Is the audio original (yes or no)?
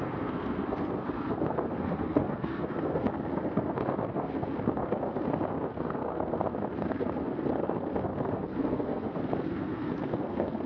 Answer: no